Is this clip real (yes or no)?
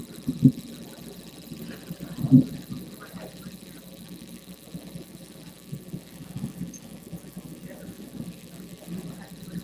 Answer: no